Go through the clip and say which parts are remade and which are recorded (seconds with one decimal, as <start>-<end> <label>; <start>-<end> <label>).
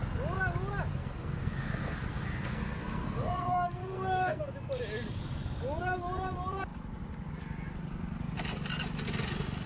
0.0-1.0 recorded; 1.0-4.4 remade; 4.4-9.7 recorded